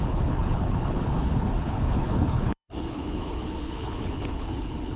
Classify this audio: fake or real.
fake